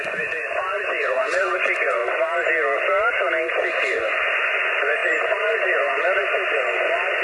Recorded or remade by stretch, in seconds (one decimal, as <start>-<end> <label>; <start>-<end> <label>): 0.0-2.0 remade; 2.0-3.7 recorded; 3.7-7.2 remade